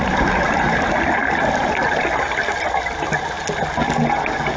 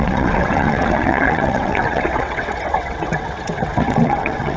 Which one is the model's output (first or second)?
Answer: second